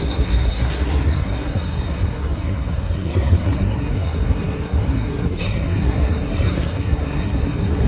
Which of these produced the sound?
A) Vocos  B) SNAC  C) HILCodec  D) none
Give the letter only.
B